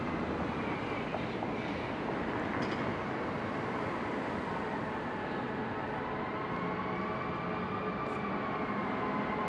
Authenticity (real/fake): real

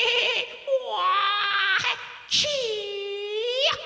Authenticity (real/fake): real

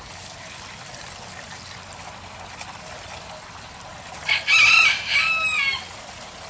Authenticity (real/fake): real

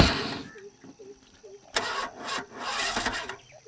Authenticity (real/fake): real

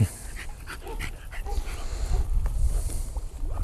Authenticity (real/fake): real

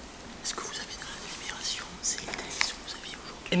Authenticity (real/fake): real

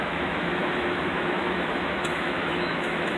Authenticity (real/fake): fake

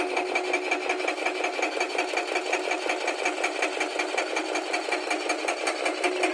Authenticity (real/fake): real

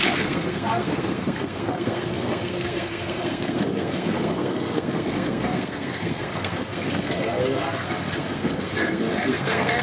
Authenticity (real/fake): fake